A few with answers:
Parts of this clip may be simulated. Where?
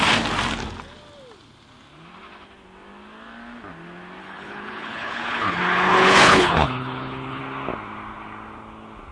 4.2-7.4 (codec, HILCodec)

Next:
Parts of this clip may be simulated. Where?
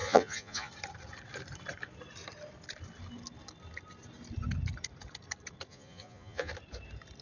0.0-0.7 (vocoder, Vocos); 5.7-6.5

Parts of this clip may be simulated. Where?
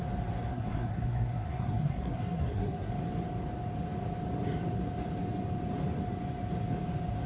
0.5-2.9 (codec, SNAC)